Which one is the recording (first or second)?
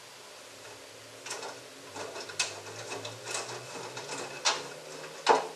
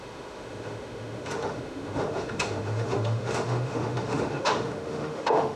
first